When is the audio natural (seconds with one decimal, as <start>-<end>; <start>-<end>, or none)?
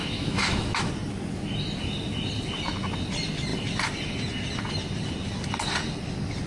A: 0.9-6.5